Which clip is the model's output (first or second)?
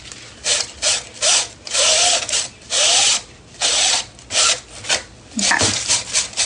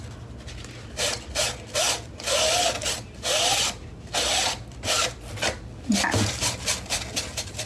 first